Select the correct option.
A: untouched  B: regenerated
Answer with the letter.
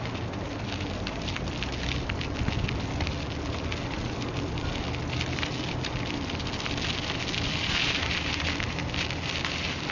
A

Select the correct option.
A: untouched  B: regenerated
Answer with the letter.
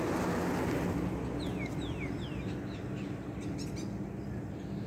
A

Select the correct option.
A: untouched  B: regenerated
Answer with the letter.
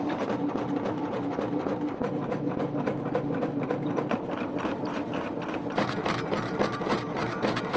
B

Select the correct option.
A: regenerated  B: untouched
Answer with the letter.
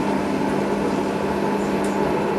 B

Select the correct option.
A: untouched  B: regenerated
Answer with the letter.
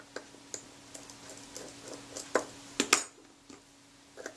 A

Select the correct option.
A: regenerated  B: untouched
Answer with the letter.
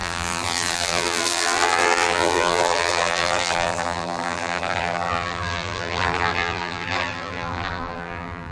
A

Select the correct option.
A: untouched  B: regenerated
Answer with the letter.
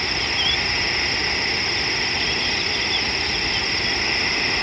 A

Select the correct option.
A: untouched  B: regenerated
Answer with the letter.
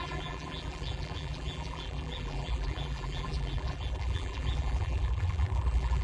B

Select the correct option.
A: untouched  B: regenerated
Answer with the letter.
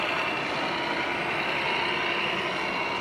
A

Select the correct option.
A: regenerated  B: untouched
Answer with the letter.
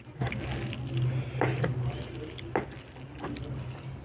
B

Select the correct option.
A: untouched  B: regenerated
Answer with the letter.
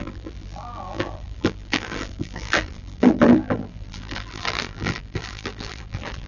B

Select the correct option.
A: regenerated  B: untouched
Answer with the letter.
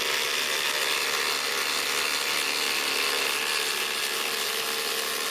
B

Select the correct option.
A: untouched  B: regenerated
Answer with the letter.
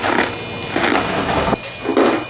A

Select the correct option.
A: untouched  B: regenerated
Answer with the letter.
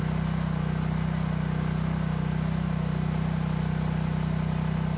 A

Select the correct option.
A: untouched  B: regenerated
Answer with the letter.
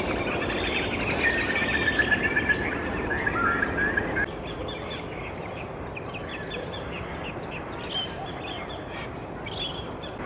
A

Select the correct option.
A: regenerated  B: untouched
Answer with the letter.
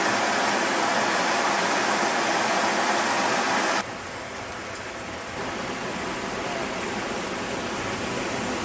B